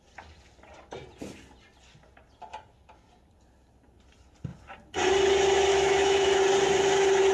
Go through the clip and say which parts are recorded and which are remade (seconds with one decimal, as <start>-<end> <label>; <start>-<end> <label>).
0.0-5.7 recorded; 5.7-6.4 remade; 6.4-7.3 recorded

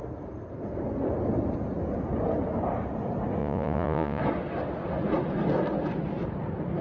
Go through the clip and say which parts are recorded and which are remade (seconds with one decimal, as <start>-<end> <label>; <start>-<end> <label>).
0.0-3.4 recorded; 3.4-4.2 remade; 4.2-6.8 recorded

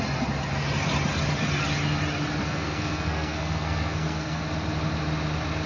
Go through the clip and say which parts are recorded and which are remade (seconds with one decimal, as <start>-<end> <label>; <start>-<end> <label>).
0.0-2.4 recorded; 2.4-4.4 remade; 4.4-5.7 recorded

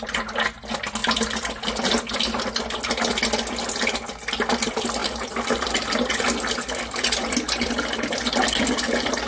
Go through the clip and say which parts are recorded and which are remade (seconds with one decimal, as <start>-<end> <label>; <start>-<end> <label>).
0.0-1.0 recorded; 1.0-2.4 remade; 2.4-5.0 recorded; 5.0-7.7 remade; 7.7-9.3 recorded